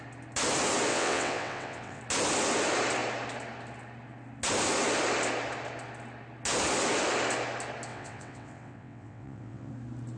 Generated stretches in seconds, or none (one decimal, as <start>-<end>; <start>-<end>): 0.9-2.0; 7.9-9.7